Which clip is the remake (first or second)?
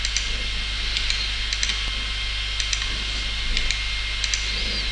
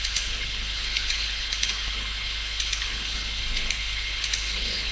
second